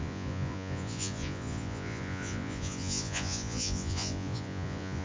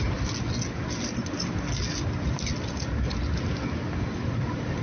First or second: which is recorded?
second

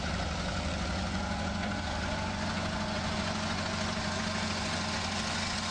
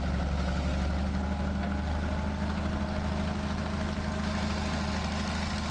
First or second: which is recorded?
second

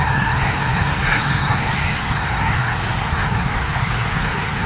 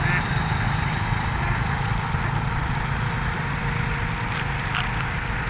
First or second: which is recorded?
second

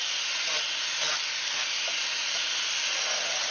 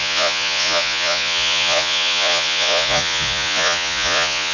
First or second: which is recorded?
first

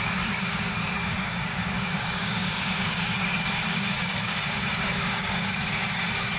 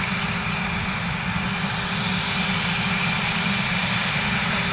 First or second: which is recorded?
second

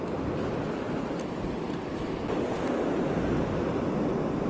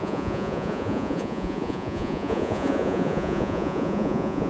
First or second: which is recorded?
first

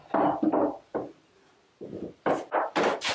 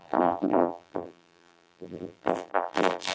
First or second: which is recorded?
first